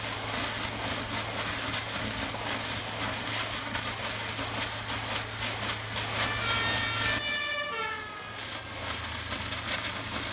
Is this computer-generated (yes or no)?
no